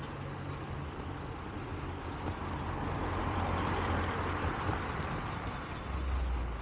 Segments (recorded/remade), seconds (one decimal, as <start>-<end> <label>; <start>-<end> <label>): 0.0-1.7 recorded; 1.7-5.7 remade; 5.7-6.6 recorded